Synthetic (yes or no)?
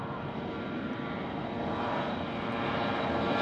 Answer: no